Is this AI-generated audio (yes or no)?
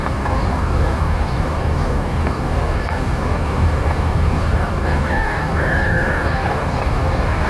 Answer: yes